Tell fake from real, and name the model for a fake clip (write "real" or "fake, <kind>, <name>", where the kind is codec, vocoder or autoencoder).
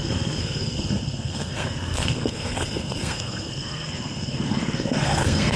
fake, codec, SNAC